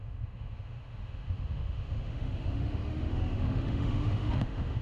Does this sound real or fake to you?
fake